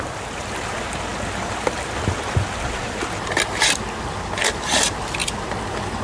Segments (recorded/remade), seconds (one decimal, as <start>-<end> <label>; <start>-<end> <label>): 0.0-6.0 recorded